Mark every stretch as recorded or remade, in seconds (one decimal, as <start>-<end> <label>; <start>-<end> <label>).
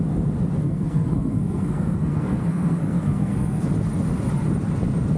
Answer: 0.0-0.6 recorded; 0.6-3.7 remade; 3.7-5.2 recorded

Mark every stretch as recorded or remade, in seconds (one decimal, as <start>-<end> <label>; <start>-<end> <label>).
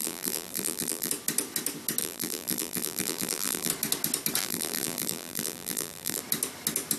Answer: 0.0-1.1 remade; 1.1-2.0 recorded; 2.0-3.7 remade; 3.7-4.4 recorded; 4.4-6.2 remade; 6.2-7.0 recorded